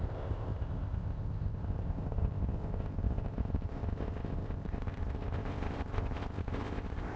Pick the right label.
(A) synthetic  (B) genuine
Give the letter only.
A